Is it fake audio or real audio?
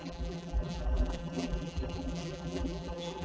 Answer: fake